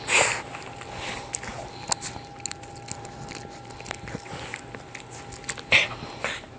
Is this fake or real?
real